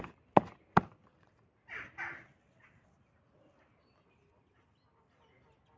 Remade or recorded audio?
recorded